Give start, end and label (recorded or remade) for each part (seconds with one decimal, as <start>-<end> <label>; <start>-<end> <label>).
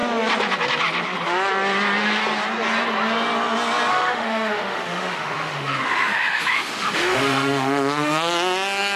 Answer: 0.0-3.9 recorded; 3.9-8.3 remade; 8.3-9.0 recorded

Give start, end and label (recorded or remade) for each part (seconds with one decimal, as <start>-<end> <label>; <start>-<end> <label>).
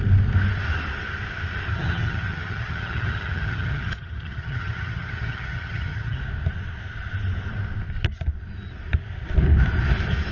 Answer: 0.0-1.7 recorded; 1.7-6.2 remade; 6.2-10.3 recorded